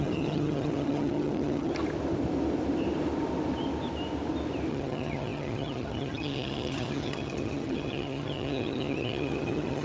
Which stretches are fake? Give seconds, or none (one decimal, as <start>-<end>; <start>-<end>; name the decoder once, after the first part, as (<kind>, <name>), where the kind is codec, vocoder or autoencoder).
0.0-1.7 (vocoder, HiFi-GAN); 4.7-9.8